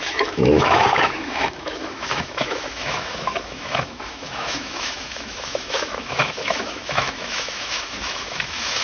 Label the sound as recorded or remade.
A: remade